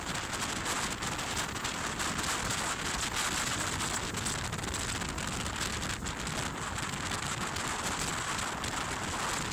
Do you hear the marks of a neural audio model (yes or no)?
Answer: no